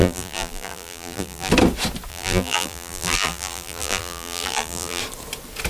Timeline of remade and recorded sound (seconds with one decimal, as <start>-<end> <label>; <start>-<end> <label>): 0.0-1.5 remade; 1.5-2.1 recorded; 2.1-5.0 remade; 5.0-5.7 recorded